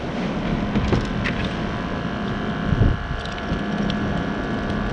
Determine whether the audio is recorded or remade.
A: recorded